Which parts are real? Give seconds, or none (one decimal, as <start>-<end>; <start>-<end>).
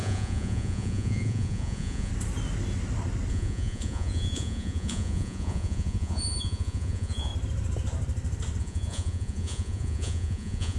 2.1-3.3; 7.3-8.6